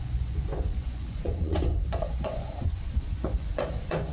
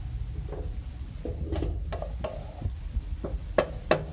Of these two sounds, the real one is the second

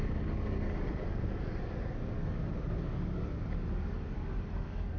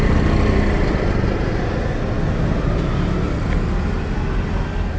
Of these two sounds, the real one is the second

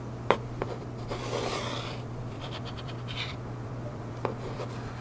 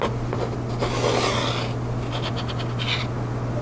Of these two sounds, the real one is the second